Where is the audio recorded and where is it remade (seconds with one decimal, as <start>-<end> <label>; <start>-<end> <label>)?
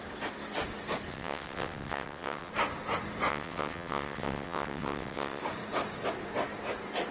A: 0.0-1.1 recorded; 1.1-2.5 remade; 2.5-3.3 recorded; 3.3-5.4 remade; 5.4-7.1 recorded